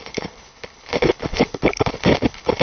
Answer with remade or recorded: remade